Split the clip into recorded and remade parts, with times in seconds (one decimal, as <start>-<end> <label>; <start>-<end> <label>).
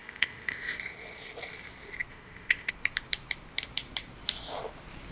0.0-0.8 remade; 0.8-2.1 recorded; 2.1-2.7 remade; 2.7-5.1 recorded